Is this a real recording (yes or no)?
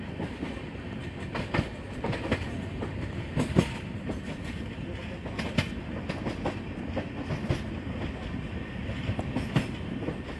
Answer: yes